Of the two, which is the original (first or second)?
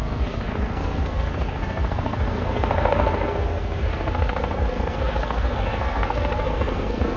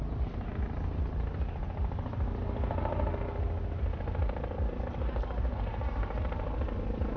second